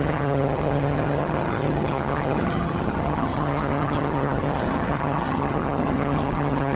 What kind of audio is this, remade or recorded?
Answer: remade